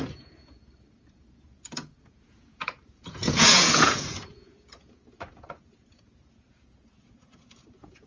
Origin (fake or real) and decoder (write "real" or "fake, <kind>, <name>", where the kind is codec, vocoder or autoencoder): fake, vocoder, Vocos